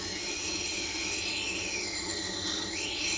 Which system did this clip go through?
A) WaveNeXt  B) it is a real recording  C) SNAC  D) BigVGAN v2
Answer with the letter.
B